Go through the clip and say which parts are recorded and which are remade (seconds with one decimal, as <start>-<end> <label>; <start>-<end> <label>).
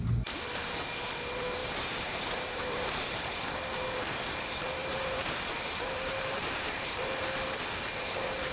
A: 0.0-1.6 recorded; 1.6-3.5 remade; 3.5-4.8 recorded; 4.8-7.1 remade; 7.1-8.5 recorded